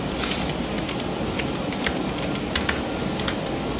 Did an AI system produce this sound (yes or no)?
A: no